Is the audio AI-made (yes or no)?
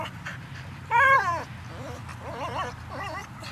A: no